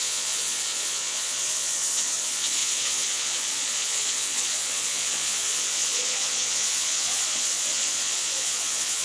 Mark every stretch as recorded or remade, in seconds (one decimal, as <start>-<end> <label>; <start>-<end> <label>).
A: 0.0-9.0 remade